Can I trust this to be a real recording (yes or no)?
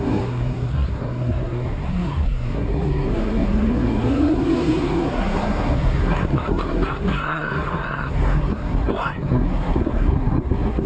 no